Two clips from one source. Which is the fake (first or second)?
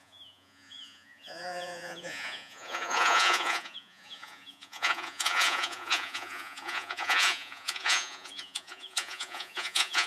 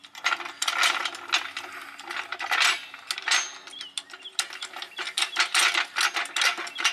first